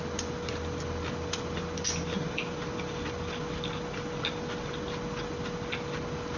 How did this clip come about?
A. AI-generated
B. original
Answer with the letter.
B